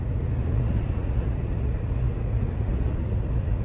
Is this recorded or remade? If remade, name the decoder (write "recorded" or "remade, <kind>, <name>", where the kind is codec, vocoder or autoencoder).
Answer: remade, vocoder, Vocos